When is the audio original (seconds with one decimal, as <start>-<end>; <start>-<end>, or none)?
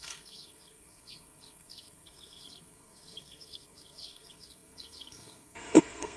none